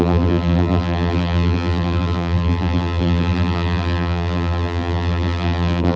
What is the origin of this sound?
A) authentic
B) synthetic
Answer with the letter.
B